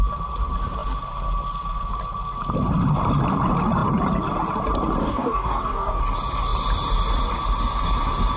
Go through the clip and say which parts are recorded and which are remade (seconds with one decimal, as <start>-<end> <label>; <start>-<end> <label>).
0.0-5.0 recorded; 5.0-6.0 remade; 6.0-8.4 recorded